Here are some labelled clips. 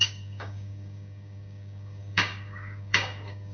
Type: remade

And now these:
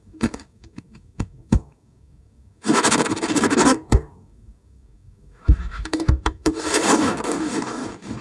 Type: remade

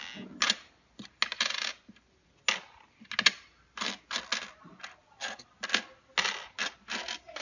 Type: recorded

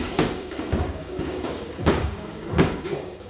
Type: remade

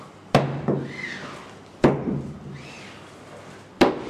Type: recorded